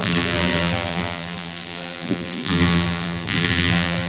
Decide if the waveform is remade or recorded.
remade